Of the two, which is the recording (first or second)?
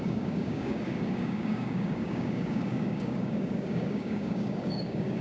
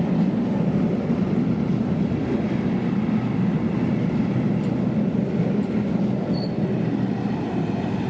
second